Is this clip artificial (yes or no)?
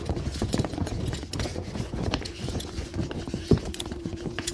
yes